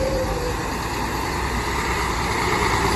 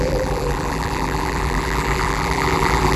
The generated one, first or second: second